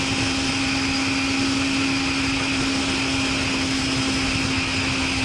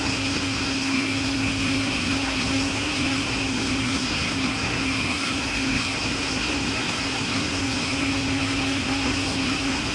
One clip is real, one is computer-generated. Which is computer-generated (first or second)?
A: second